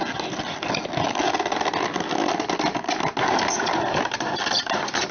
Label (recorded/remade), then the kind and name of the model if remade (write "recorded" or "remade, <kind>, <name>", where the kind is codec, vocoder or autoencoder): recorded